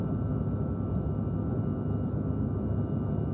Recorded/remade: recorded